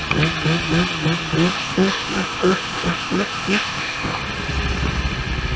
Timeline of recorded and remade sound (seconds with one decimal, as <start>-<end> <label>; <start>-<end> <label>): 0.0-1.5 recorded; 1.5-4.2 remade; 4.2-5.6 recorded